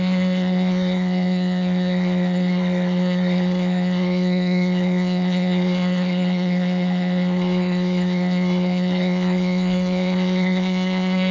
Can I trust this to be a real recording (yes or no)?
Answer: no